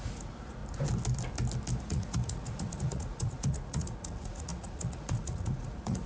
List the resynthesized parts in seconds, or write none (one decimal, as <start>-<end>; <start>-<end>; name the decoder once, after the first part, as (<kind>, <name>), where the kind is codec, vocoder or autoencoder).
0.0-0.6 (vocoder, Vocos); 1.8-6.1